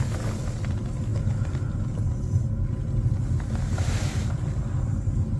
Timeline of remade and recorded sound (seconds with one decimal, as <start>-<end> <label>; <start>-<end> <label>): 0.0-5.4 recorded